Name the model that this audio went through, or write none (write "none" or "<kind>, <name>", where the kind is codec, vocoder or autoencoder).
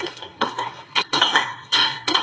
codec, SNAC